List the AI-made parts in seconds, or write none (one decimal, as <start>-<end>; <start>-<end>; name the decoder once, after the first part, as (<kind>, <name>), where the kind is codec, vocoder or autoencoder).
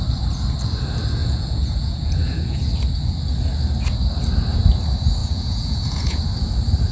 1.2-2.6 (vocoder, Vocos); 5.2-6.2